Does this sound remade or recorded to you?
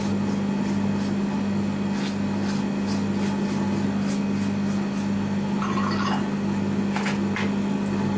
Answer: recorded